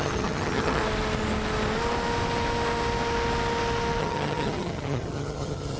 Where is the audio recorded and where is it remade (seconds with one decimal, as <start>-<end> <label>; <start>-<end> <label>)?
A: 0.0-0.8 remade; 0.8-4.0 recorded; 4.0-5.8 remade